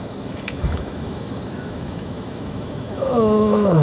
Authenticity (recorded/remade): remade